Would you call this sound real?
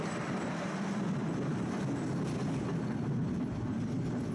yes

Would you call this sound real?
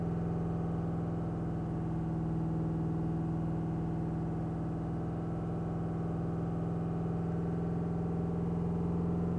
yes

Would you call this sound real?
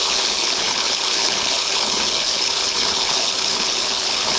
no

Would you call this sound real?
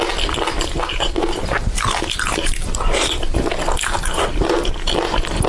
yes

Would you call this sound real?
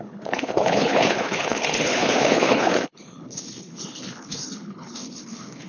no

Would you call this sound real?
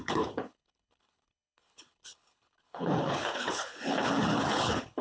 no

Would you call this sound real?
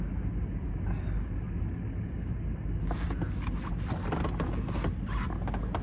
yes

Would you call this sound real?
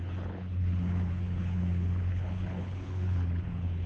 no